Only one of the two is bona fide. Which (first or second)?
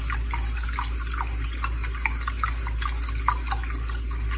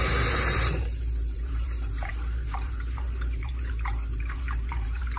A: first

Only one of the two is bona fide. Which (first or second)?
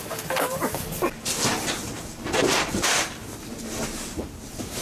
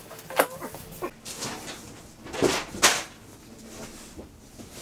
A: second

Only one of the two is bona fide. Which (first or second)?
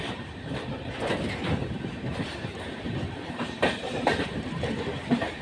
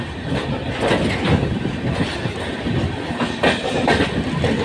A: second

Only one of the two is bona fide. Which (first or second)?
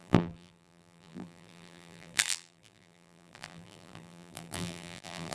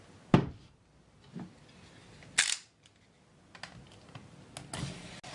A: second